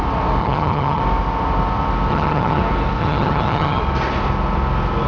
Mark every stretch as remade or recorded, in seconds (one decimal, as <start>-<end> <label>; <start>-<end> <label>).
0.0-0.4 recorded; 0.4-1.0 remade; 1.0-2.1 recorded; 2.1-2.6 remade; 2.6-3.0 recorded; 3.0-3.8 remade; 3.8-5.1 recorded